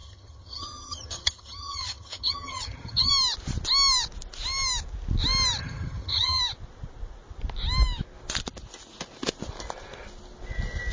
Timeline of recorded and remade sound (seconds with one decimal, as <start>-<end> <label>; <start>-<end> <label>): 0.0-3.1 remade; 3.1-5.6 recorded; 5.6-6.4 remade; 6.4-10.9 recorded